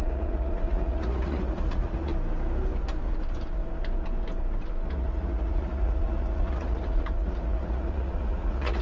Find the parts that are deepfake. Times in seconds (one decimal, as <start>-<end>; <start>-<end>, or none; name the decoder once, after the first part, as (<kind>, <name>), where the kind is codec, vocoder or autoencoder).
0.0-2.1 (vocoder, Vocos); 4.9-8.8